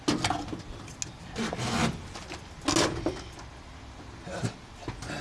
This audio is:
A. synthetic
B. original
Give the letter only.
B